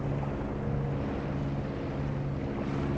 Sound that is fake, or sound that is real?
real